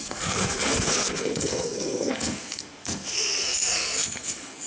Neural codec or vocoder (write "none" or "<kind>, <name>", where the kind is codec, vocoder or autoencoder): codec, SNAC